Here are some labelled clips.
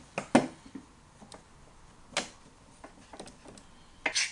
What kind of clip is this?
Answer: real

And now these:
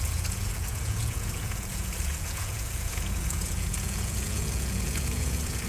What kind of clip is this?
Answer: fake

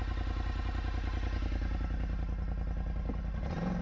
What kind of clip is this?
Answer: real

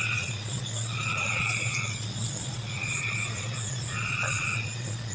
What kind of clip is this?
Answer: fake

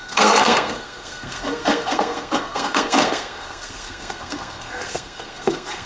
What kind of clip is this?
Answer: fake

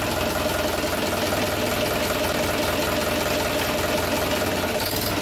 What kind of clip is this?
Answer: real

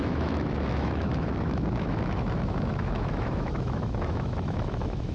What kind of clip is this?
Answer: fake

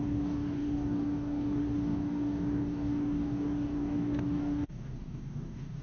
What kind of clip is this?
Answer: fake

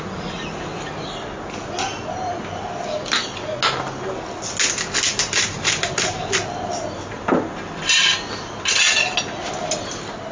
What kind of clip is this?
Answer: real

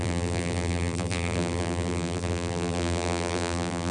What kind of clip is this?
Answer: fake